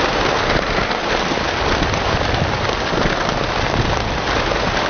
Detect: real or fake real